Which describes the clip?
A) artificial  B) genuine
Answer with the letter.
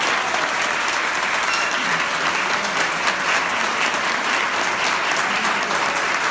B